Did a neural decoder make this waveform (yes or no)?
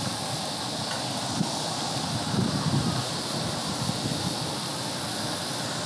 no